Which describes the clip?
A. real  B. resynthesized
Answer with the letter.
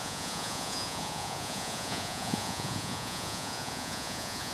B